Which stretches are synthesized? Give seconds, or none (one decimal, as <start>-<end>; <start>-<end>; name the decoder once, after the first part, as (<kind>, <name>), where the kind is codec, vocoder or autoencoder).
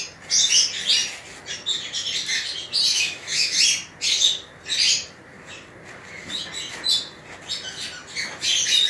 2.9-3.6 (autoencoder, DAC-VAE)